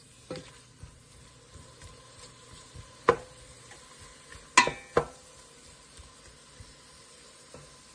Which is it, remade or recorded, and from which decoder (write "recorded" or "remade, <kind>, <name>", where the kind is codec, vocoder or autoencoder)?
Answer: recorded